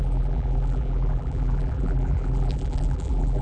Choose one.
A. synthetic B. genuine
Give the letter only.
A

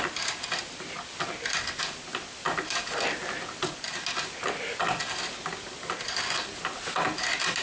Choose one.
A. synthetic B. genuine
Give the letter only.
B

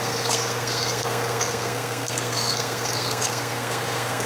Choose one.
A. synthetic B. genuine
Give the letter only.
A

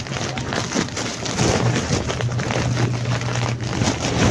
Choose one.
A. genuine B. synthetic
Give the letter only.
A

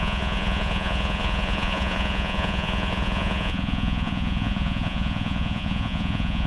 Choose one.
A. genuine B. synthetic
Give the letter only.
B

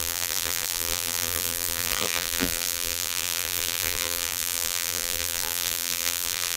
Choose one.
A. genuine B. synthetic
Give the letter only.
B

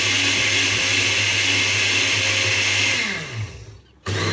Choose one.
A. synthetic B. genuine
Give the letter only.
B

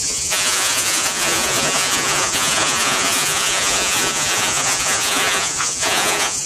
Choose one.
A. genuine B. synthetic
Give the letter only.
B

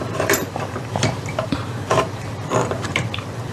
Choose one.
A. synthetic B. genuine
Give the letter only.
A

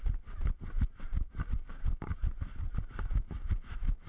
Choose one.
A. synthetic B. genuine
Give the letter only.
B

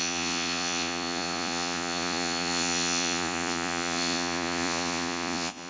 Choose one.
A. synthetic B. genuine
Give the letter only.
A